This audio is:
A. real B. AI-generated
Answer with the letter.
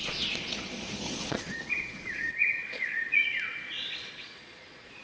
B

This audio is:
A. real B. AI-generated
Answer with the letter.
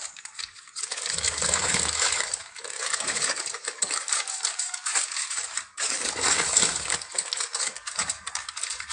B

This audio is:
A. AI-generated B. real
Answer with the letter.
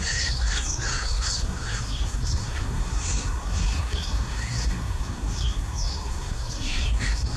A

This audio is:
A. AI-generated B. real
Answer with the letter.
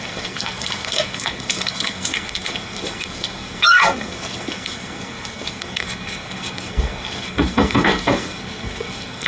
A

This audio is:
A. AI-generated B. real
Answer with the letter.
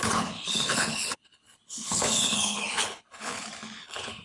A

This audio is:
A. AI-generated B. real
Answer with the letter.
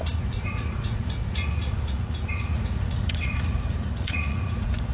A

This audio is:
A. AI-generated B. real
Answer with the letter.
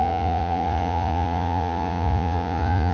A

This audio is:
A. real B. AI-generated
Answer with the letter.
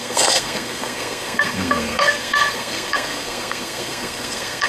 B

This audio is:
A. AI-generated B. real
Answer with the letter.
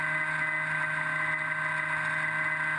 B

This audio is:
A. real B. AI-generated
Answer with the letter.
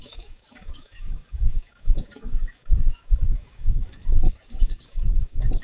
B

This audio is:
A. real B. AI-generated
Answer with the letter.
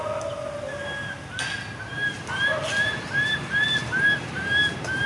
A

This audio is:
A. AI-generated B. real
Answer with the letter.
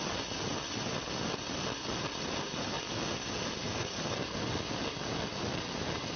B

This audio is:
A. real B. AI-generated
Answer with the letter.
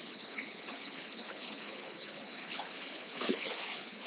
B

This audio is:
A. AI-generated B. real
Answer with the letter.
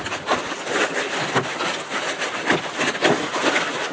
B